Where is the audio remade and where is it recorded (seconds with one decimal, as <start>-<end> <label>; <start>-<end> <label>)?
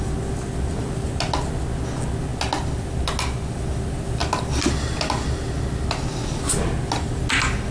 0.0-7.7 recorded